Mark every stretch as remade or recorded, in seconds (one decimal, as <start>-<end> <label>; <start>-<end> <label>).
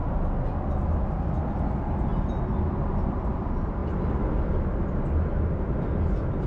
0.0-6.5 recorded